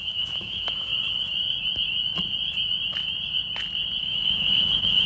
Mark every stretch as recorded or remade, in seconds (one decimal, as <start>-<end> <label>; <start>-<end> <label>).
0.0-0.9 remade; 0.9-4.0 recorded; 4.0-5.1 remade